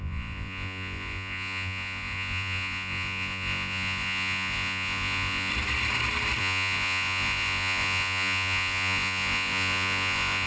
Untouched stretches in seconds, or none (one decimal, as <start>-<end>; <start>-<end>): 5.5-6.4